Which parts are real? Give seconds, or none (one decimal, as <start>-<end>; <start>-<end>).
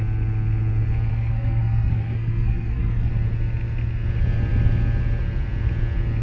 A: 0.0-1.1; 3.1-6.2